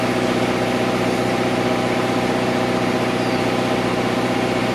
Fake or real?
real